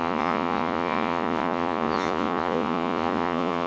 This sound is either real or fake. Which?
fake